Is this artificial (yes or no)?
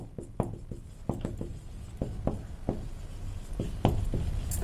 no